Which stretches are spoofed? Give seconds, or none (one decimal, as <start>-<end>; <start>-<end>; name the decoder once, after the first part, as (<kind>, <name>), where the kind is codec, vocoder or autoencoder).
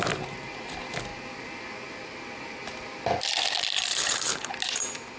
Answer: 3.9-4.5 (codec, HILCodec)